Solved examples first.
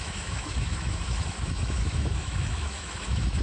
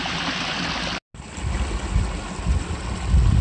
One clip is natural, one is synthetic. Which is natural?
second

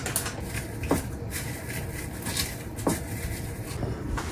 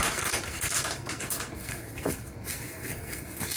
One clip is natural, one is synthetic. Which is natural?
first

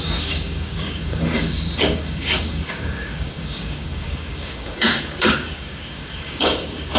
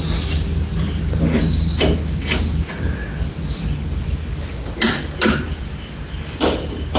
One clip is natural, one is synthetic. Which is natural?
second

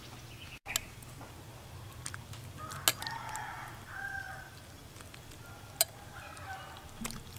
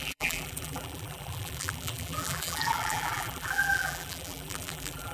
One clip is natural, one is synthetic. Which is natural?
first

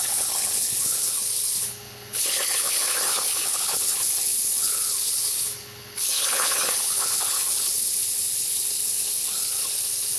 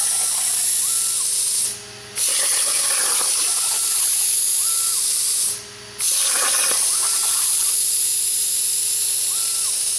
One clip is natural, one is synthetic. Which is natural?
second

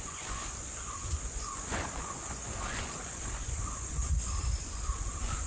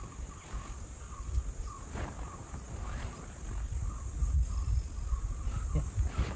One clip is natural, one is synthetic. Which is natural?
second